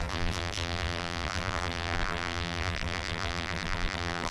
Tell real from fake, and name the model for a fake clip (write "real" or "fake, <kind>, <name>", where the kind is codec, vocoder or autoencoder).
fake, vocoder, BigVGAN v2